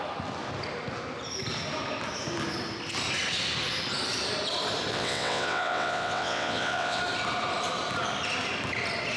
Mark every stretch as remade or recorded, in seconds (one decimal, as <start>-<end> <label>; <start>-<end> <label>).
0.0-4.9 recorded; 4.9-7.0 remade; 7.0-9.2 recorded